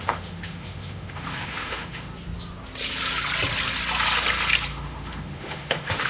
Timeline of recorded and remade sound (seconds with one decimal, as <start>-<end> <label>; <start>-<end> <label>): 0.0-2.1 remade; 2.1-4.7 recorded; 4.7-6.1 remade